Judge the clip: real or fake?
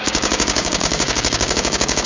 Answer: fake